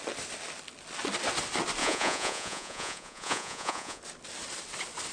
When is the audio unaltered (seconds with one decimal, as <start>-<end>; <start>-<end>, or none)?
0.0-1.8; 4.0-5.1